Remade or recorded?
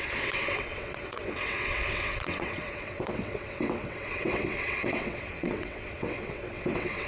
remade